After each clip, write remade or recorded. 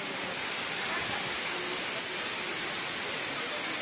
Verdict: recorded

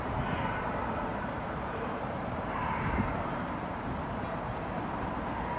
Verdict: remade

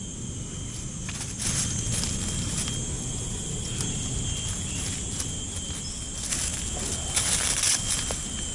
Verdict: recorded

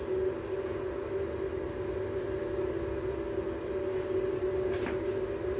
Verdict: recorded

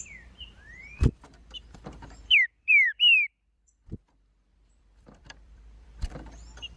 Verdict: remade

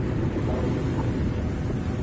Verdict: recorded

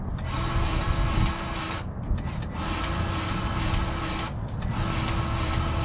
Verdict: recorded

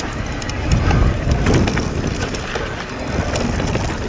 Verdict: recorded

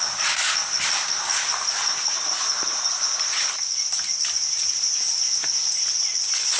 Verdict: recorded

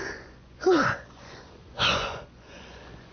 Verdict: remade